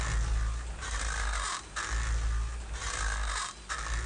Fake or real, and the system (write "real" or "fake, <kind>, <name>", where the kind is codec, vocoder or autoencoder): real